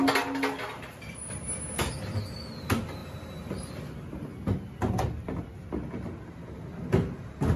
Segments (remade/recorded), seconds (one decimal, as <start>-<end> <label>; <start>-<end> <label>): 0.0-3.0 recorded; 3.0-3.9 remade; 3.9-7.6 recorded